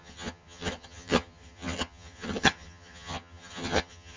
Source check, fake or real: fake